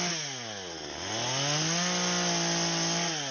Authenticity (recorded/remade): recorded